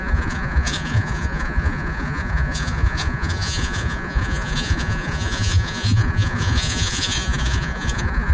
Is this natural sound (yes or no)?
no